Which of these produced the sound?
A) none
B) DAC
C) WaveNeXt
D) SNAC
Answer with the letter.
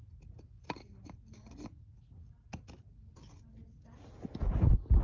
A